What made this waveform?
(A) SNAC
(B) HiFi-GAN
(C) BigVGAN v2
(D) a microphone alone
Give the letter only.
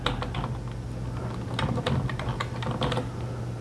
D